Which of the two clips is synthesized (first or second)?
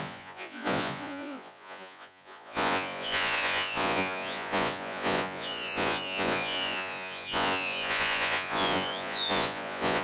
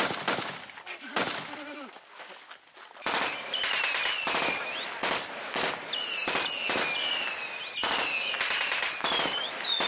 first